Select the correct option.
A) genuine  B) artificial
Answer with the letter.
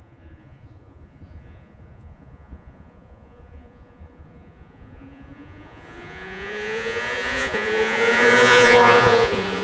B